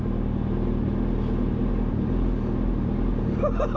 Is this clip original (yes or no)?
yes